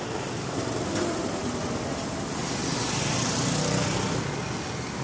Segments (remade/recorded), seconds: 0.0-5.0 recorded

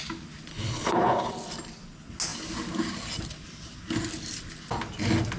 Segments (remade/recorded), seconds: 0.0-0.5 recorded; 0.5-1.3 remade; 1.3-5.4 recorded